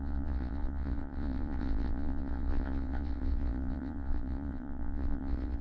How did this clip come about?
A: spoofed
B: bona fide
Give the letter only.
A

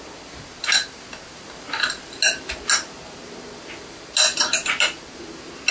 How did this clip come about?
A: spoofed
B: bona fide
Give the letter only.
B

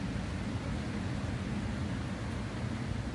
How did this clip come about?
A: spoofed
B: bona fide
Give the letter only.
B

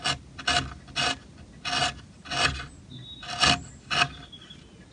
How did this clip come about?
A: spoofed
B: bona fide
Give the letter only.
B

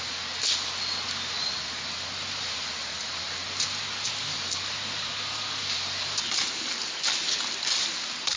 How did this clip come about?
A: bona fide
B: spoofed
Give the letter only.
A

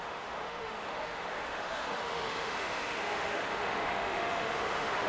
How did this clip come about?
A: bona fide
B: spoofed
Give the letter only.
B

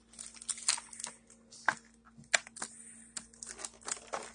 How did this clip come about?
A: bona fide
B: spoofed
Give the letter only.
A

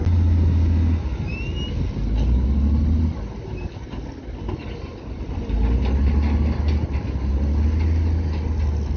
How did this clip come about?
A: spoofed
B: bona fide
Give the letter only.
B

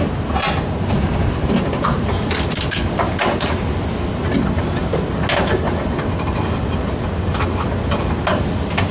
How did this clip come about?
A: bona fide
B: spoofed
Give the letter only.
A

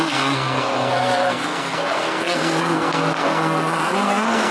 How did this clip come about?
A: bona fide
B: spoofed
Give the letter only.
B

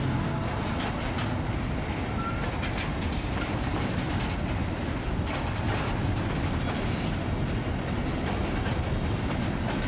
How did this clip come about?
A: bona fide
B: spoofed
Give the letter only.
A